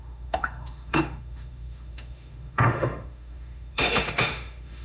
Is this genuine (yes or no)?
no